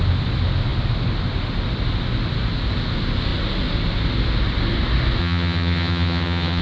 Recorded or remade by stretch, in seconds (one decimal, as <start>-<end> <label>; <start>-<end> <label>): 0.0-5.2 recorded; 5.2-6.6 remade